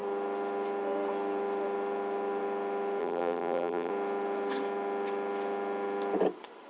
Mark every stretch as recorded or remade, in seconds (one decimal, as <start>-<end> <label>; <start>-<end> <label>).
0.0-3.0 recorded; 3.0-3.9 remade; 3.9-6.7 recorded